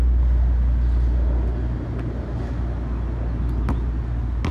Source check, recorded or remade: recorded